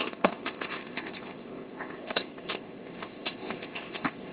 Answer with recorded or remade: remade